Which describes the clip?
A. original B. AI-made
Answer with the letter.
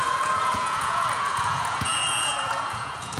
B